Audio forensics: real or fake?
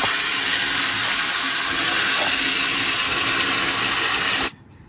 real